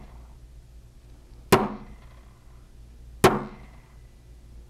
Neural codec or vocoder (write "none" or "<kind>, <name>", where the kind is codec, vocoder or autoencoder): none